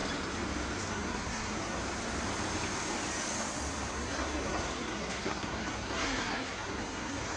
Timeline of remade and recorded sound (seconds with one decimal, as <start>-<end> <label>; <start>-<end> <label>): 0.0-0.9 recorded; 0.9-1.8 remade; 1.8-3.9 recorded; 3.9-7.4 remade